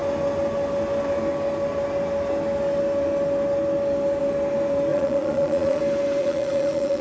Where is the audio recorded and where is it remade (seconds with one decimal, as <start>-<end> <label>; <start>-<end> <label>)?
0.0-4.9 recorded; 4.9-5.8 remade; 5.8-6.2 recorded; 6.2-7.0 remade